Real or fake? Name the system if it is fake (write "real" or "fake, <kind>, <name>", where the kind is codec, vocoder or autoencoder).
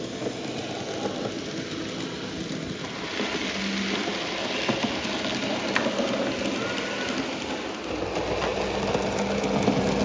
real